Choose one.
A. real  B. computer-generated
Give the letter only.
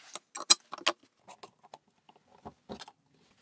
A